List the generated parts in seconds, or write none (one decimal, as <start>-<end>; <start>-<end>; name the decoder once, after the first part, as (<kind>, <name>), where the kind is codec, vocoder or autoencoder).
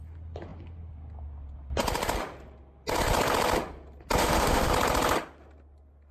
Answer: 4.2-4.7 (autoencoder, DAC-VAE)